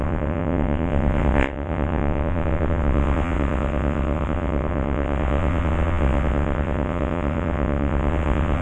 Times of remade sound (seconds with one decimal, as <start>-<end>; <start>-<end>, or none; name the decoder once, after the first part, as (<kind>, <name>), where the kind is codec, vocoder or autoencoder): 0.0-8.6 (vocoder, WaveNeXt)